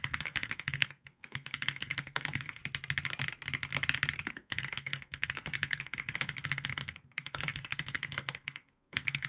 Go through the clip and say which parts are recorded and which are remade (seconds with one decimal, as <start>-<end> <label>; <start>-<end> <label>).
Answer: 0.0-2.6 remade; 2.6-4.3 recorded; 4.3-9.3 remade